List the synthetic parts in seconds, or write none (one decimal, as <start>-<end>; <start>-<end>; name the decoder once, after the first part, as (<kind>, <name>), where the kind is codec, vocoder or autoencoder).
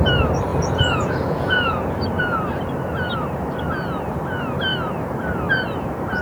0.5-1.9 (vocoder, Vocos)